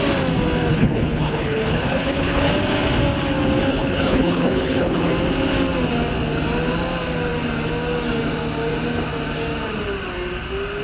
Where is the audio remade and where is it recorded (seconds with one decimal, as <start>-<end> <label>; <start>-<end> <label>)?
0.0-0.7 recorded; 0.7-2.5 remade; 2.5-3.7 recorded; 3.7-5.1 remade; 5.1-10.8 recorded